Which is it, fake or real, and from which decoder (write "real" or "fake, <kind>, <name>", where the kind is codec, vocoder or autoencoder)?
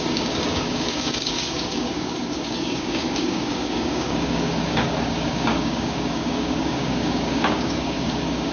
fake, codec, DAC